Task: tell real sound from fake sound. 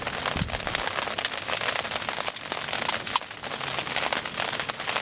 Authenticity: real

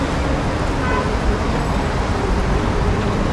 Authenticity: real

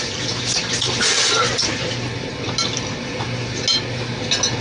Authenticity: real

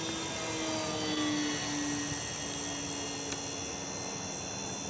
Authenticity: real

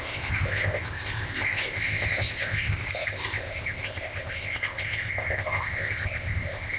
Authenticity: fake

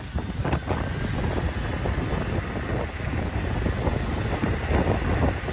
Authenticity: real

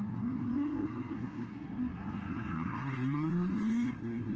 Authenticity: fake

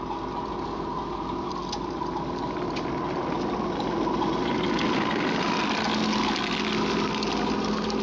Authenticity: real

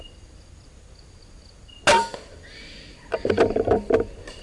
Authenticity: real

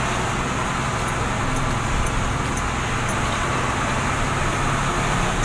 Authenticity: real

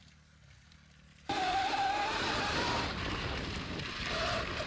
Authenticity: real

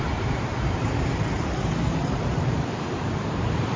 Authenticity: fake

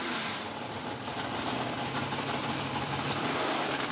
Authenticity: fake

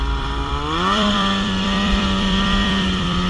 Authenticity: fake